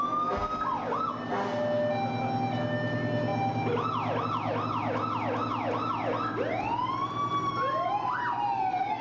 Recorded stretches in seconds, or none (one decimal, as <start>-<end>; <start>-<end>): 0.0-9.0